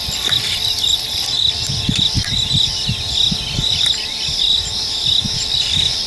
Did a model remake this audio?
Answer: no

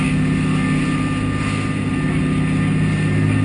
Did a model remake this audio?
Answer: no